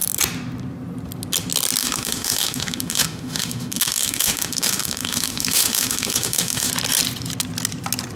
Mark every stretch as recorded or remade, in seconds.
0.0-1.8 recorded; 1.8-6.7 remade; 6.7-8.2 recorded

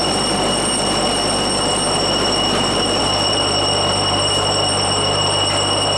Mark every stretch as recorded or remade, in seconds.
0.0-6.0 recorded

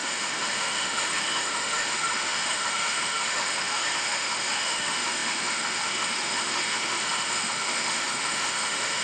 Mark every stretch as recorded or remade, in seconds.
0.0-9.0 remade

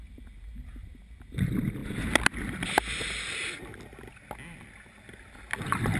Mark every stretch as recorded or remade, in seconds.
0.0-6.0 recorded

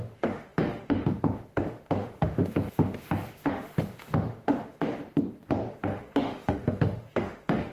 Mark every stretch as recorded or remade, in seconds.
0.0-5.0 remade; 5.0-5.7 recorded; 5.7-7.7 remade

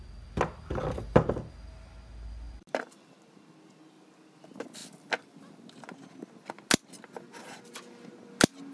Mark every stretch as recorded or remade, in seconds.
0.0-8.7 recorded

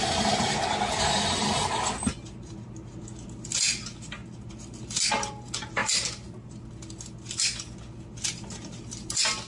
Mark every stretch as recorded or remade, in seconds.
0.0-9.5 recorded